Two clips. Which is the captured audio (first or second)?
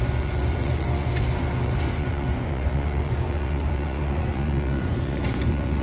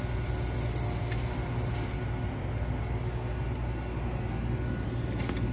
second